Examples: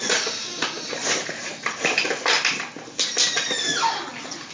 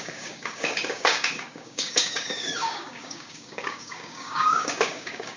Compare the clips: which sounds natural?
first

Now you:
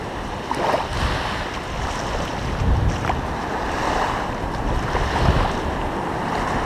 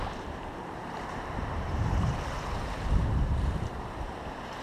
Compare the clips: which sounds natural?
first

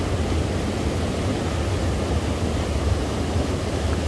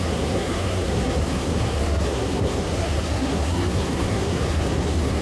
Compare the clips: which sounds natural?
first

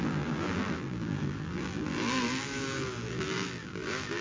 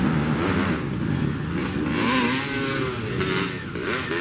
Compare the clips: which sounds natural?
second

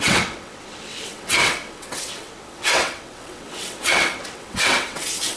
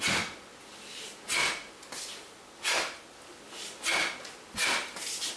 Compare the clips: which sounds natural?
second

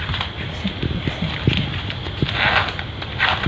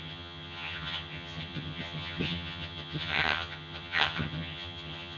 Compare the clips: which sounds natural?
first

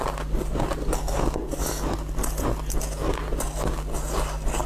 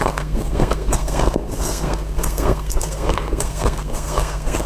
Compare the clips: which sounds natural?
first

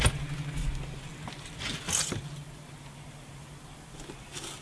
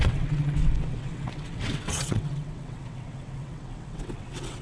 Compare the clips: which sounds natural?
first